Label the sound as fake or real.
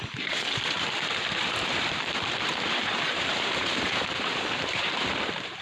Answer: fake